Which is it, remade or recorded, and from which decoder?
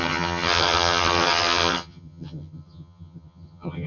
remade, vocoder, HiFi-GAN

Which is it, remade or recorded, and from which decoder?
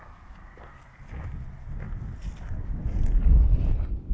recorded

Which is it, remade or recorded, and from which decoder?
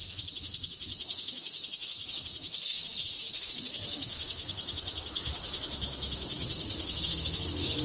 remade, autoencoder, DAC-VAE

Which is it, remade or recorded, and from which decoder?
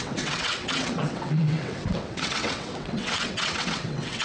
remade, vocoder, WaveNeXt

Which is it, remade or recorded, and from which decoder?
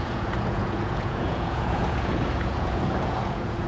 remade, vocoder, Vocos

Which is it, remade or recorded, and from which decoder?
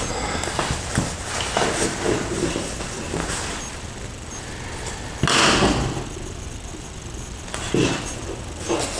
recorded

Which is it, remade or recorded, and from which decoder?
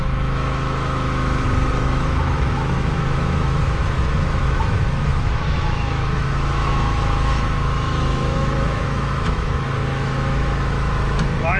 remade, autoencoder, DAC-VAE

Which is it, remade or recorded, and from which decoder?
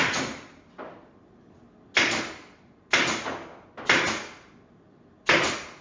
recorded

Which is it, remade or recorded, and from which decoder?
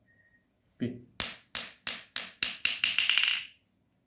recorded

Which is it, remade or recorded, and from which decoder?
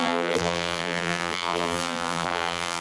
remade, vocoder, BigVGAN v2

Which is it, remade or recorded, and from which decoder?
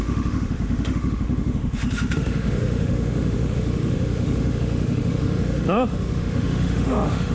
remade, autoencoder, DAC-VAE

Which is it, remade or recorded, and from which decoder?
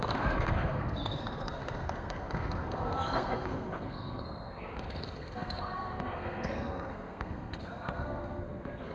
remade, codec, SNAC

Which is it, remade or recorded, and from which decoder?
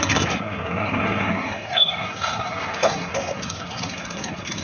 remade, codec, SNAC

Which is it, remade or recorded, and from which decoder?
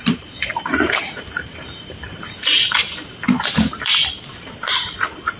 remade, vocoder, BigVGAN v2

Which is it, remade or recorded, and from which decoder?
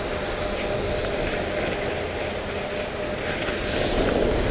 recorded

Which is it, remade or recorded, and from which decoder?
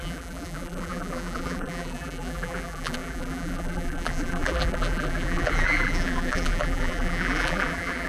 remade, vocoder, BigVGAN v2